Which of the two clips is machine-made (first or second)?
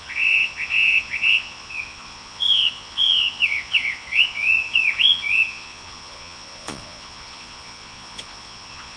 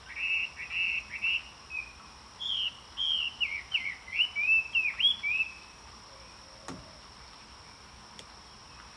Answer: first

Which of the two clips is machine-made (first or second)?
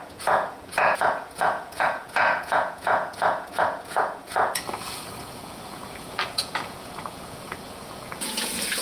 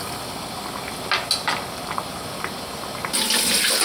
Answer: first